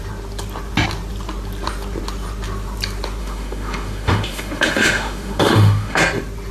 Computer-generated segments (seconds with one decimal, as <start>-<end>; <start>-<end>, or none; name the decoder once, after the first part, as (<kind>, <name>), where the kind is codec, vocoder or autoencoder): 3.2-6.0 (autoencoder, DAC-VAE)